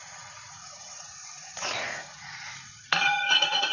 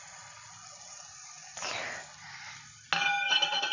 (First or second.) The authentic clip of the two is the second